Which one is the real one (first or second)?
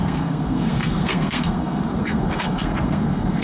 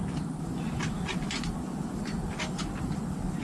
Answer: second